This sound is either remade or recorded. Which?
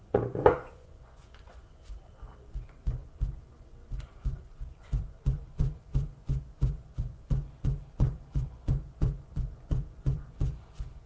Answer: remade